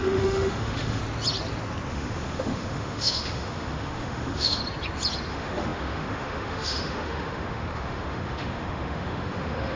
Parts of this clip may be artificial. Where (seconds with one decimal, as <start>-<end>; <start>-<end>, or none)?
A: 0.0-1.0; 1.9-4.6; 5.3-9.8